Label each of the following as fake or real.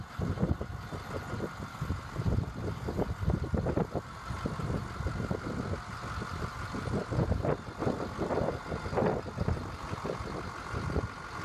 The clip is real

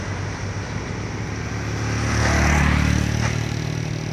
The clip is real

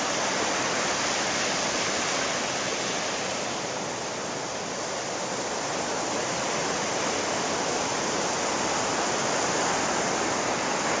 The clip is real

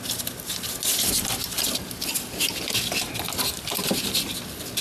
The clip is real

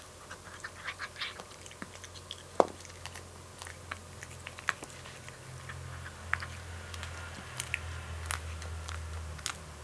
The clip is real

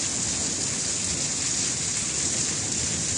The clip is real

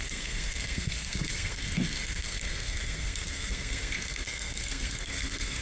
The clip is fake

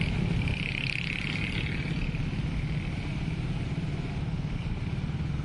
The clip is real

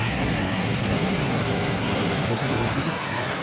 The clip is fake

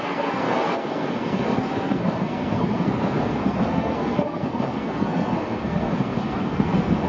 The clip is fake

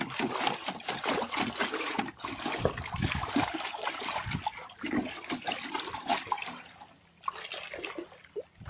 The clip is real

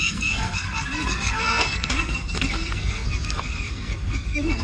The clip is fake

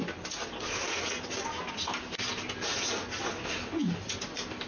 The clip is real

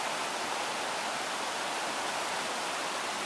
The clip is real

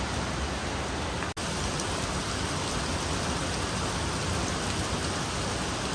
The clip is real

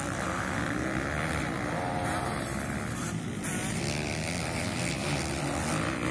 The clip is real